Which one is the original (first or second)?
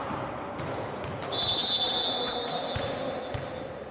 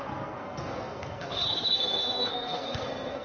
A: first